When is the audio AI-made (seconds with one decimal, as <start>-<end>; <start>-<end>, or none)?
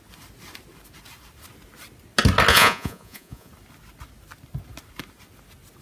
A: 2.5-3.5